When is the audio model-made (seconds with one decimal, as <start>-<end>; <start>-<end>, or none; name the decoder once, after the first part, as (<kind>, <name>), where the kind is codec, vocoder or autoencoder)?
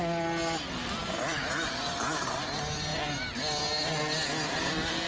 none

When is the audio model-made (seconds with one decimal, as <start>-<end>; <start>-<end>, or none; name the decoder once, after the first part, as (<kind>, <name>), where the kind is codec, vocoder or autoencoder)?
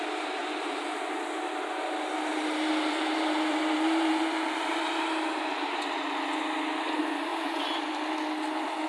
0.4-1.0 (vocoder, BigVGAN v2); 2.3-5.8; 7.3-7.9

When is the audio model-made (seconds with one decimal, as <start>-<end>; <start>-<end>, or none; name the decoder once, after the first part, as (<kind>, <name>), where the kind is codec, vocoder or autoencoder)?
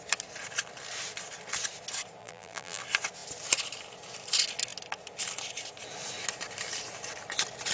2.2-2.8 (vocoder, BigVGAN v2)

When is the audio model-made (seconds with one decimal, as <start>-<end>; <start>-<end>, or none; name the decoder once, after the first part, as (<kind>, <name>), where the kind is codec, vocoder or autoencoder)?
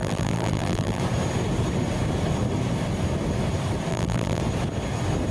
0.0-1.0 (vocoder, BigVGAN v2); 3.9-4.4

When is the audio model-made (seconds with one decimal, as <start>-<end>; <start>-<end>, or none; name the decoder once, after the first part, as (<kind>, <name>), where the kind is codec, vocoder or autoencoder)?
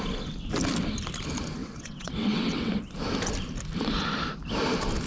1.6-2.7 (vocoder, WaveNeXt)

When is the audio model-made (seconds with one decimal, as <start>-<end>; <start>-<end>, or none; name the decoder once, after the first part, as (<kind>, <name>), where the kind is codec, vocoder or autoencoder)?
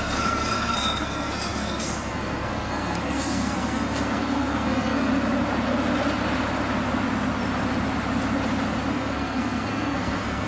0.0-5.1 (codec, SNAC); 8.9-10.5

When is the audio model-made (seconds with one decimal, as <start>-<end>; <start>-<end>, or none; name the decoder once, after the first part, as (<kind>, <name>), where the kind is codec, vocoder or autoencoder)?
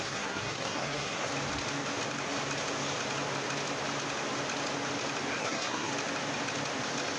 0.0-1.3 (codec, SNAC); 5.4-5.9